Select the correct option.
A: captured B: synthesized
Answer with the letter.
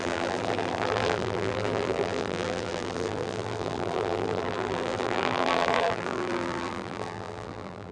B